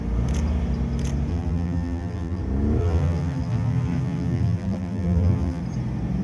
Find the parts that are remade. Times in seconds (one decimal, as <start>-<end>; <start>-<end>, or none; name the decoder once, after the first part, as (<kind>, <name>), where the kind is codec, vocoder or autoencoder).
1.3-2.4 (vocoder, BigVGAN v2); 2.8-5.6